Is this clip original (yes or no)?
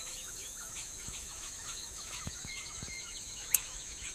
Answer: no